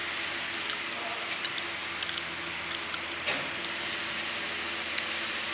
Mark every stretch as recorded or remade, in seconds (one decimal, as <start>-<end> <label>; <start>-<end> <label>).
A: 0.0-5.5 recorded